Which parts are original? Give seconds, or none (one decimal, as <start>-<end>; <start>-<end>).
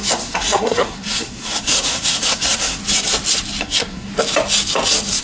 2.8-3.6; 4.1-5.2